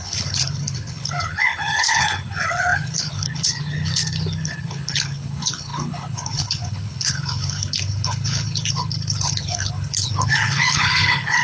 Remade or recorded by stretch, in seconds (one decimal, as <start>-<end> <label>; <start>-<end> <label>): 0.0-11.4 remade